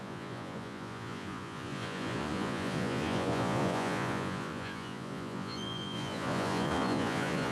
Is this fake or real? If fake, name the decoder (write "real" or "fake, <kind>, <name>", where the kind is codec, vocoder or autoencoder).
fake, vocoder, Vocos